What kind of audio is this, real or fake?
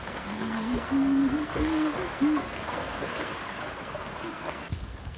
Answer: fake